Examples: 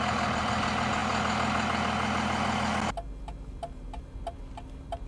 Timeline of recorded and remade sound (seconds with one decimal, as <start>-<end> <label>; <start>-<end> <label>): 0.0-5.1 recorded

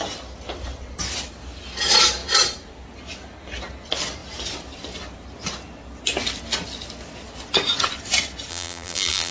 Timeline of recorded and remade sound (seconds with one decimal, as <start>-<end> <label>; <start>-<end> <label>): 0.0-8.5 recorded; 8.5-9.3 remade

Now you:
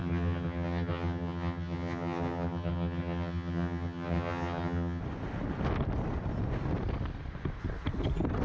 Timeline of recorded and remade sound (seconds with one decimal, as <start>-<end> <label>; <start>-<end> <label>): 0.0-5.0 remade; 5.0-8.4 recorded